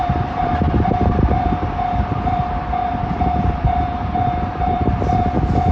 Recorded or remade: remade